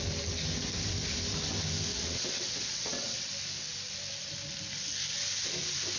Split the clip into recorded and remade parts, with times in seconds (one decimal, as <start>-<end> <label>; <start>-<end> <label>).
0.0-1.9 recorded; 1.9-3.3 remade; 3.3-6.0 recorded